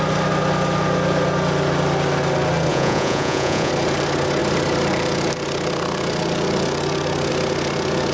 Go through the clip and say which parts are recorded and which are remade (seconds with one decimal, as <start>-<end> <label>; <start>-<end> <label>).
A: 0.0-2.7 recorded; 2.7-3.7 remade; 3.7-8.1 recorded